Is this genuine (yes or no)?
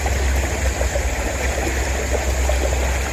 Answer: yes